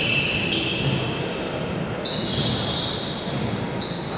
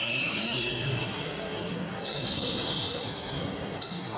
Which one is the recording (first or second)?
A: first